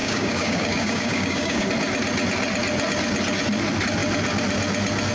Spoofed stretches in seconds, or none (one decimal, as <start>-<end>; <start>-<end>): 0.0-1.7